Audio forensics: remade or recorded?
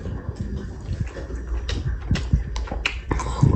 recorded